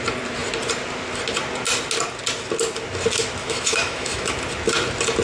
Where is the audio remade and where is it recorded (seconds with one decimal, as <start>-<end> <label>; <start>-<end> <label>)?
0.0-3.4 recorded; 3.4-4.3 remade; 4.3-5.2 recorded